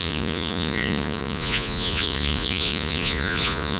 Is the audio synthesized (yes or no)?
yes